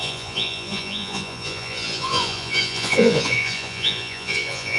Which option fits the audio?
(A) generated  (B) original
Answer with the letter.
A